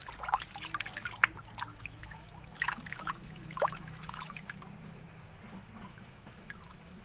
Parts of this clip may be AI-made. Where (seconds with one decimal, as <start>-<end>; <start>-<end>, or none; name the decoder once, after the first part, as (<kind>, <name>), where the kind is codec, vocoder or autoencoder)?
1.7-4.6 (autoencoder, DAC-VAE); 5.9-7.0